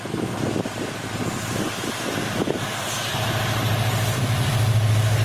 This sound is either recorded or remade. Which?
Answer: remade